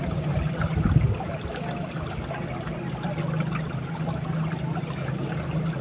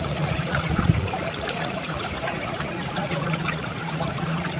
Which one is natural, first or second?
first